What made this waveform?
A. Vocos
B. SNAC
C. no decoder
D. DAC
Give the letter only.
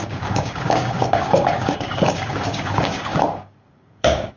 D